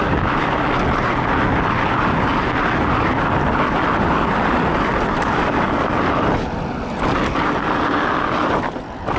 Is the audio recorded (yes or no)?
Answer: yes